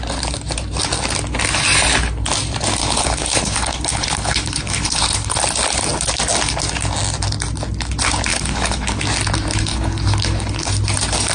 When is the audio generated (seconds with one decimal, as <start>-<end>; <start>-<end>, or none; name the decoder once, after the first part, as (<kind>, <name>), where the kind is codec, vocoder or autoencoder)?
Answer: 2.8-5.4 (codec, HILCodec); 8.3-9.0; 9.7-10.7